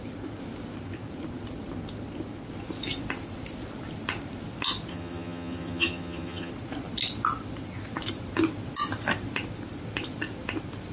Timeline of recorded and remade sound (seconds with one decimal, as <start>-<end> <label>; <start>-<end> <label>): 0.0-4.9 recorded; 4.9-6.5 remade; 6.5-10.9 recorded